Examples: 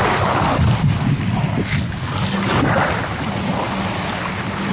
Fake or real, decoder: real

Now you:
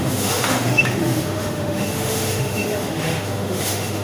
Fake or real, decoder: fake, autoencoder, DAC-VAE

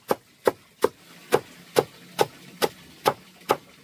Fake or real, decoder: real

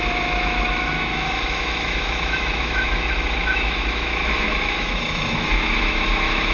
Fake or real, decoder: fake, autoencoder, DAC-VAE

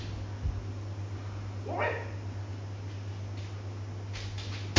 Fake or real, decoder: real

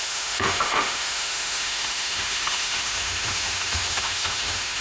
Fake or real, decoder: fake, autoencoder, DAC-VAE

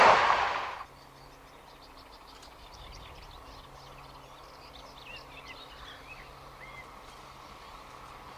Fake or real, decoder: real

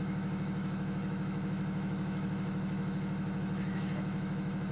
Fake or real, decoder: fake, autoencoder, DAC-VAE